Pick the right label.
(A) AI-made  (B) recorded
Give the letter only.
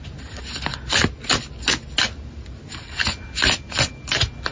B